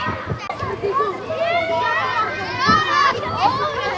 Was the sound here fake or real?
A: real